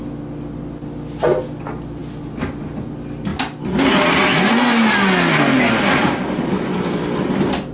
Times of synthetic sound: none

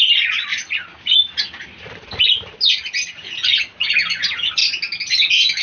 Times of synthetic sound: none

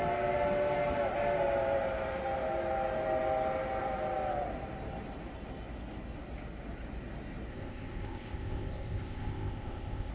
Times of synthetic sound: 7.5-10.1 (codec, ZipCodec)

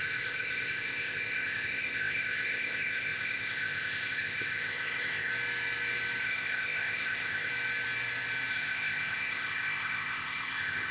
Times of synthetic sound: 0.0-5.3 (codec, ZipCodec); 6.2-7.5; 8.5-10.9

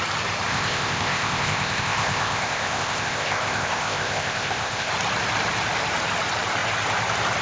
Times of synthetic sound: 0.5-4.9 (codec, ZipCodec)

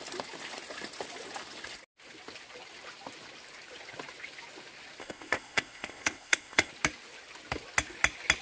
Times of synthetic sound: 5.0-6.7 (codec, ZipCodec)

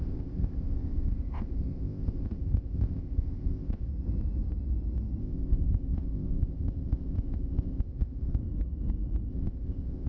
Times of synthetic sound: 0.0-3.9 (codec, ZipCodec); 5.2-8.4; 9.3-10.1

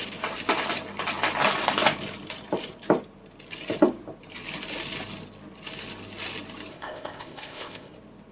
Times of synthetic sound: 6.7-7.9 (codec, ZipCodec)